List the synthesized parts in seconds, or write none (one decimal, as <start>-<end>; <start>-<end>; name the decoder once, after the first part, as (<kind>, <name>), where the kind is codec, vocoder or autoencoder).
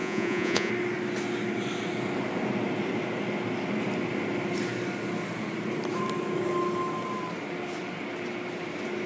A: 0.0-0.7 (vocoder, Vocos)